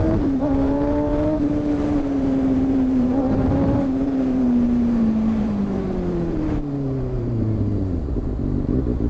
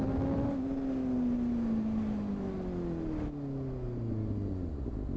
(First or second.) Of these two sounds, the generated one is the first